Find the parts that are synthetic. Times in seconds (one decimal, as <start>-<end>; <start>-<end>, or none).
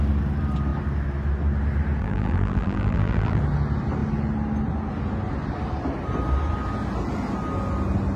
2.0-3.4